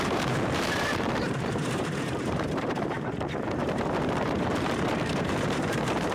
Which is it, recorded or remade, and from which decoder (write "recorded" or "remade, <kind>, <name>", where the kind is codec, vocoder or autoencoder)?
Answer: remade, vocoder, BigVGAN v2